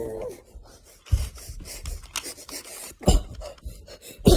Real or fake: real